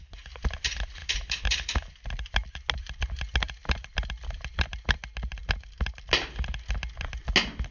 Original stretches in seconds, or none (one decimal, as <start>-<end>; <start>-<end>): 0.0-7.7